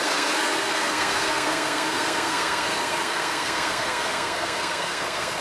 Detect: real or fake fake